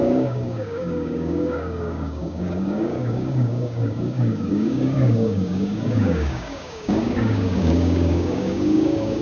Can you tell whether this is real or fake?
fake